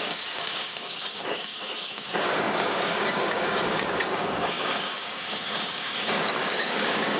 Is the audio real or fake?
fake